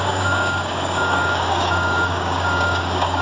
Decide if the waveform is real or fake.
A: fake